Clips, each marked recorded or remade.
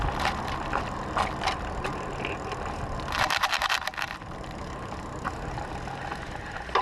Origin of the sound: recorded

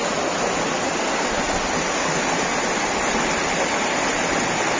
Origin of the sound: recorded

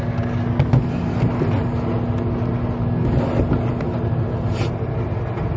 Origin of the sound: recorded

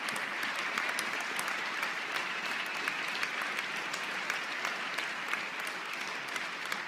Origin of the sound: recorded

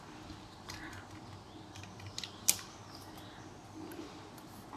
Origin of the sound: recorded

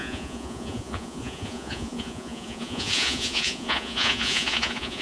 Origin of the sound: remade